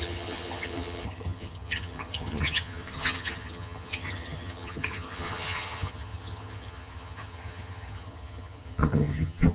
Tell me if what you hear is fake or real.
fake